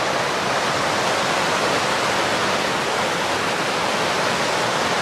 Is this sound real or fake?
real